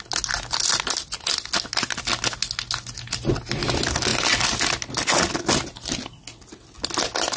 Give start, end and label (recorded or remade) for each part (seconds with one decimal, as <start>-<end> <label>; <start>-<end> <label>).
0.0-7.4 recorded